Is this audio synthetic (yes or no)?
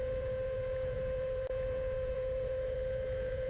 yes